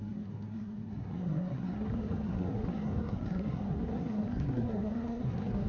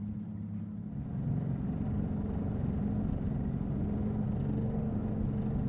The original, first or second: second